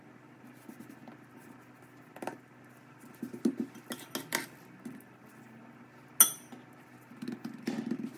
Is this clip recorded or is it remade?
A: recorded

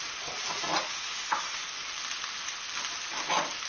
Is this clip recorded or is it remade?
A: recorded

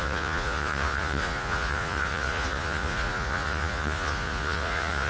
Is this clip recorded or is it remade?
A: remade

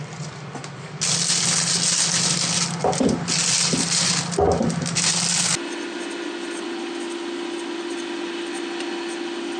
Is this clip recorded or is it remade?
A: recorded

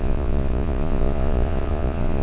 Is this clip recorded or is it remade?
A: remade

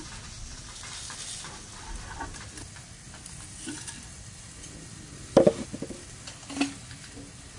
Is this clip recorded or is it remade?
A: recorded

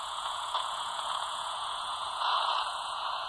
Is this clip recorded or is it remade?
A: remade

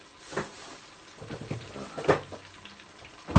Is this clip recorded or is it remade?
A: recorded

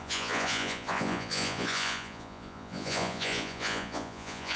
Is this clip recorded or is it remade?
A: remade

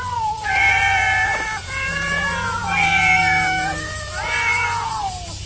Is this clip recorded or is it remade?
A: remade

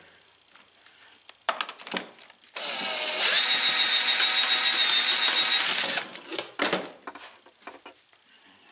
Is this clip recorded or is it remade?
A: recorded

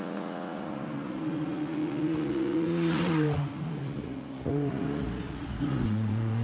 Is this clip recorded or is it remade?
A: remade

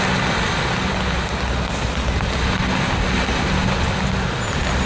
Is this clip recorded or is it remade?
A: recorded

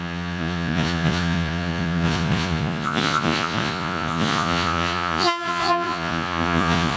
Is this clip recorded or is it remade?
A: remade